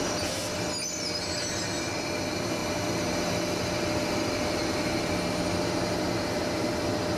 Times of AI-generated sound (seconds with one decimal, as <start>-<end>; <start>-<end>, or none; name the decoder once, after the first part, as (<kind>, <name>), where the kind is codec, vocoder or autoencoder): none